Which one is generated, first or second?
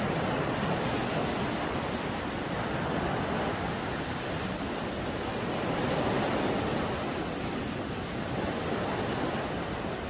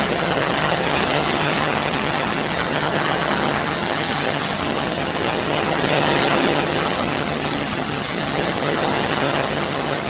second